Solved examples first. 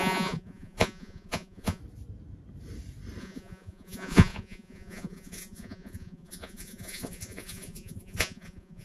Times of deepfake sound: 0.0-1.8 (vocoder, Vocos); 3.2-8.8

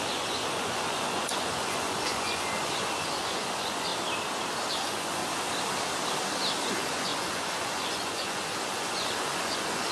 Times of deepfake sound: 0.0-3.9 (vocoder, Vocos); 4.7-5.2; 6.6-9.9

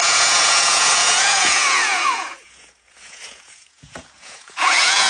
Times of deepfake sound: 0.0-5.1 (vocoder, Vocos)

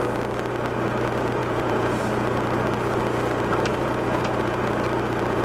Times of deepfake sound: 1.4-2.0 (vocoder, Vocos); 3.7-4.7

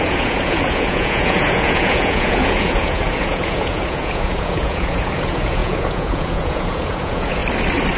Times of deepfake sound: 0.0-7.4 (vocoder, Vocos)

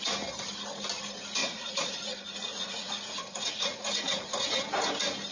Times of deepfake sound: 1.4-4.6 (vocoder, Vocos)

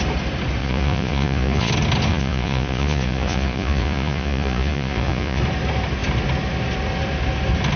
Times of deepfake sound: 0.6-1.7 (vocoder, Vocos); 2.1-5.4

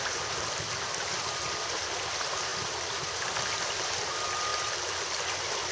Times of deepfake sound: none